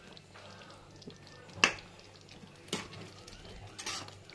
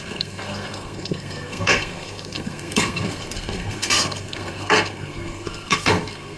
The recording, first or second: first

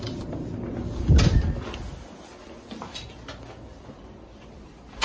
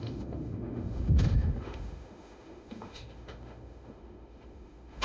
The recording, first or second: first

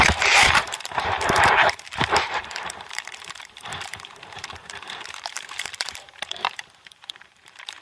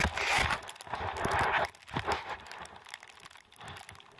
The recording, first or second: second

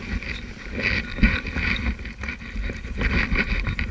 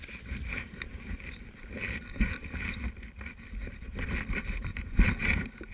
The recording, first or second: first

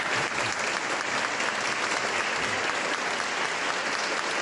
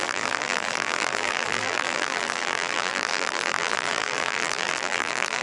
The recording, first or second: first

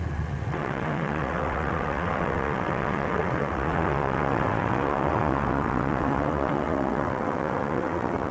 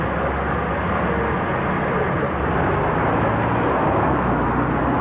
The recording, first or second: second